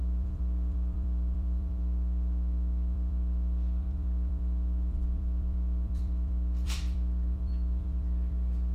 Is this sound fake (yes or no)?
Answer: yes